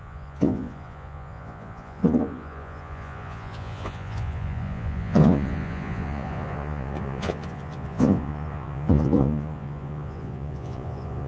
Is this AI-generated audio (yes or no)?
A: yes